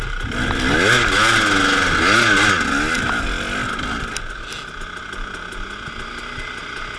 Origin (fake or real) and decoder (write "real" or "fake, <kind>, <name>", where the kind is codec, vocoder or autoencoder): real